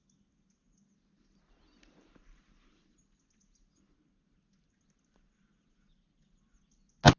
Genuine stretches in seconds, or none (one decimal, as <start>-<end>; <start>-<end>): 0.0-7.2